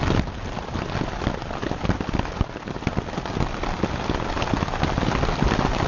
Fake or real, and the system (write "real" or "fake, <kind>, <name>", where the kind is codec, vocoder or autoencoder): real